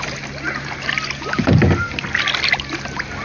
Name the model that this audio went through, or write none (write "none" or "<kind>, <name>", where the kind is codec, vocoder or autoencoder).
none